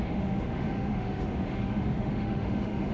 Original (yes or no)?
no